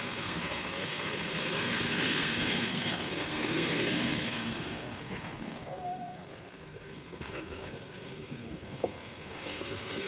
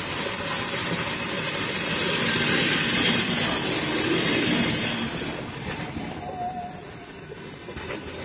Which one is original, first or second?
second